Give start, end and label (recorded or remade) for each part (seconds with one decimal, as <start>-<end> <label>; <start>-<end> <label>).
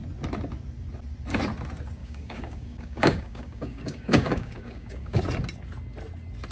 0.0-2.0 recorded; 2.0-5.2 remade; 5.2-6.5 recorded